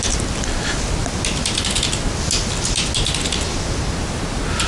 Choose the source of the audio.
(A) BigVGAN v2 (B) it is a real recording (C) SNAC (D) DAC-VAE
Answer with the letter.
B